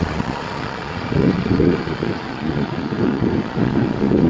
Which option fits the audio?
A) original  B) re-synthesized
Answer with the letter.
B